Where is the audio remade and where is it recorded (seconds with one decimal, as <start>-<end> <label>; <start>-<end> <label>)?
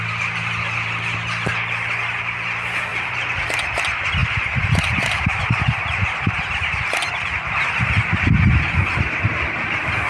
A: 0.0-2.9 recorded; 2.9-3.8 remade; 3.8-4.2 recorded; 4.2-7.9 remade; 7.9-10.1 recorded